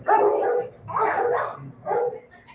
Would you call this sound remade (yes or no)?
no